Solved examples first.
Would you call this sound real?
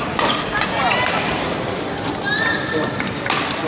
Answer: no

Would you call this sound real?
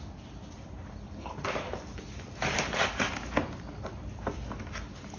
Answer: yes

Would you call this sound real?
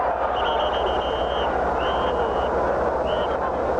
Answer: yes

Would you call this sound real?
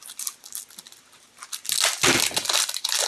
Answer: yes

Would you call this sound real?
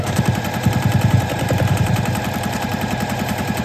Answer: no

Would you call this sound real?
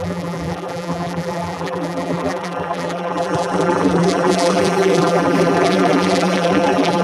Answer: no